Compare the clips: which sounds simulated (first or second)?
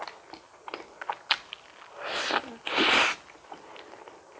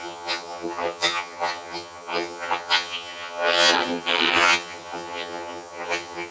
second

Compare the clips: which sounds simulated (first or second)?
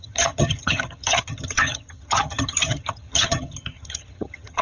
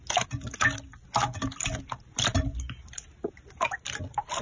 first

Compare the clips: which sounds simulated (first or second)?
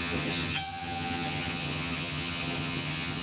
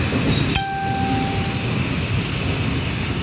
first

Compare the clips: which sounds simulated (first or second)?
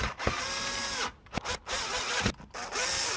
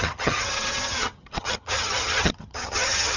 second